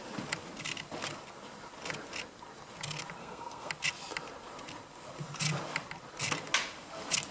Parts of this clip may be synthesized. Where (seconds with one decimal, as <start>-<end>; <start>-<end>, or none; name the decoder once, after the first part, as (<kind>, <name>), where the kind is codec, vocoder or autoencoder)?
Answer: 3.2-3.7 (codec, SNAC)